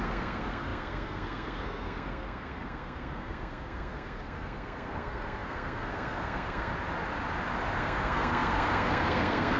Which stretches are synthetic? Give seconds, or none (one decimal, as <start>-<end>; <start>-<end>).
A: 0.0-6.7; 7.8-9.6